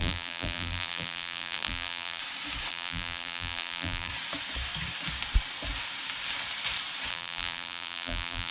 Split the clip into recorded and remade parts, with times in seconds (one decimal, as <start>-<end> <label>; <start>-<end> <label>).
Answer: 0.0-2.2 remade; 2.2-2.7 recorded; 2.7-4.1 remade; 4.1-7.1 recorded; 7.1-8.5 remade